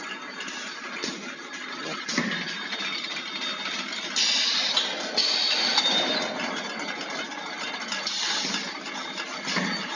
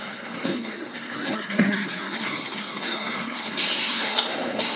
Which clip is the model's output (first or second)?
second